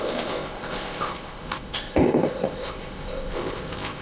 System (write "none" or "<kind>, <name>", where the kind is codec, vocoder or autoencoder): codec, ZipCodec